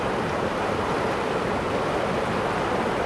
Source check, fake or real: real